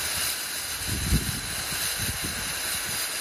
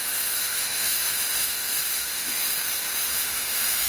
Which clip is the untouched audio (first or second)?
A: first